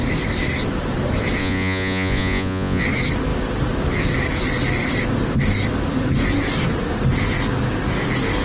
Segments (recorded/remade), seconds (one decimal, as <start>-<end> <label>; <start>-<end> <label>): 0.0-1.4 recorded; 1.4-2.8 remade; 2.8-8.4 recorded

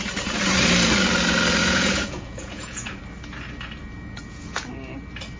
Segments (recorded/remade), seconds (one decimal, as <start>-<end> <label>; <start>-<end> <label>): 0.0-1.6 recorded; 1.6-3.0 remade; 3.0-3.8 recorded; 3.8-4.6 remade; 4.6-5.4 recorded

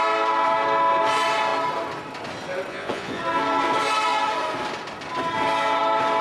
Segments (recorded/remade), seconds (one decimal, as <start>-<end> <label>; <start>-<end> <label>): 0.0-2.7 recorded; 2.7-3.2 remade; 3.2-6.2 recorded

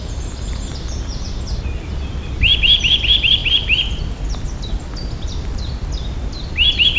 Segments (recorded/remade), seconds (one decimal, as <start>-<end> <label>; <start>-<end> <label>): 0.0-7.0 recorded

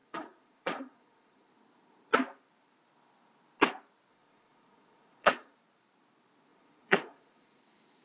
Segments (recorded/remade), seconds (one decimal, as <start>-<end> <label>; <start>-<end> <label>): 0.0-1.5 remade; 1.5-4.1 recorded; 4.1-5.6 remade; 5.6-6.5 recorded; 6.5-7.6 remade; 7.6-8.0 recorded

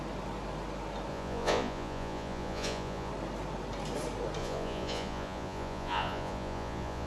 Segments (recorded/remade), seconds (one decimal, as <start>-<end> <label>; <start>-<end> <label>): 0.0-1.1 recorded; 1.1-3.1 remade; 3.1-4.4 recorded; 4.4-7.1 remade

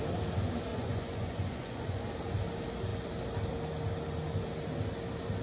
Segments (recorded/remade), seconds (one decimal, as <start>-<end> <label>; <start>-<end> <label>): 0.0-0.7 recorded; 0.7-2.0 remade; 2.0-5.4 recorded

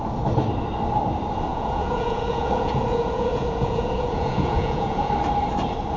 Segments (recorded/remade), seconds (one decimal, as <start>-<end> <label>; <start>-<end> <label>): 0.0-1.5 recorded; 1.5-5.1 remade; 5.1-6.0 recorded